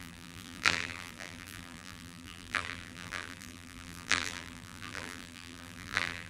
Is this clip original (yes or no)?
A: no